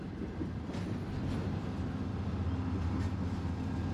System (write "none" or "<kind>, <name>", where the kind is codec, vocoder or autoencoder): none